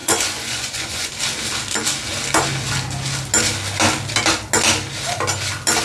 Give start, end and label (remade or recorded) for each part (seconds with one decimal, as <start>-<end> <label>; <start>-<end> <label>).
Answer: 0.0-1.1 remade; 1.1-5.8 recorded